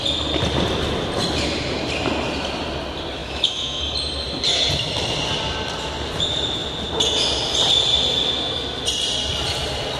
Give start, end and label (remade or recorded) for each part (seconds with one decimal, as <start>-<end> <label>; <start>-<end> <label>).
0.0-3.2 recorded; 3.2-3.8 remade; 3.8-10.0 recorded